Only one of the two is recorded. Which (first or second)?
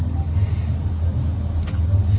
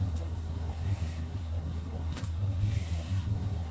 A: first